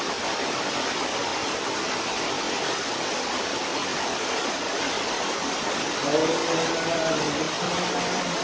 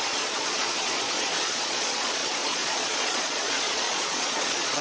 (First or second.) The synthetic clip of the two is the second